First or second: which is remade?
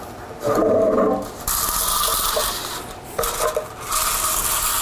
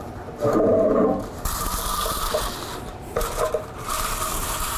second